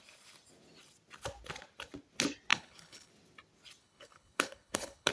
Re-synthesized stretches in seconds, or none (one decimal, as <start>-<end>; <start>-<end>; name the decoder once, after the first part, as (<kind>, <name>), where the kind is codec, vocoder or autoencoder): 2.5-3.1 (codec, HILCodec); 3.8-5.1